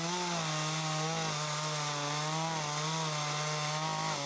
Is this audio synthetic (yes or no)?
no